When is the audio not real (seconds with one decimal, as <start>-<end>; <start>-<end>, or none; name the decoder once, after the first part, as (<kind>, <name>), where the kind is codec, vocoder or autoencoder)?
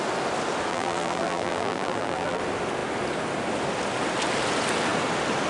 0.7-2.4 (vocoder, BigVGAN v2)